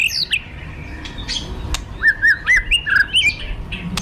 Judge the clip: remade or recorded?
recorded